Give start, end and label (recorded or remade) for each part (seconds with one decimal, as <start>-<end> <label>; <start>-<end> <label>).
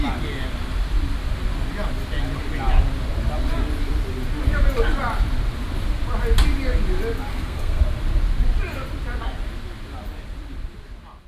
0.0-7.3 recorded; 7.3-7.8 remade; 7.8-11.3 recorded